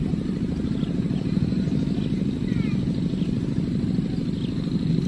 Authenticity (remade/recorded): recorded